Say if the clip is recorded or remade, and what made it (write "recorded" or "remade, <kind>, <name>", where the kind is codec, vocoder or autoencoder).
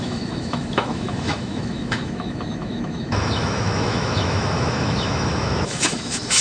remade, autoencoder, DAC-VAE